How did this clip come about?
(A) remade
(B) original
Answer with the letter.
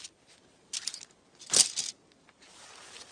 B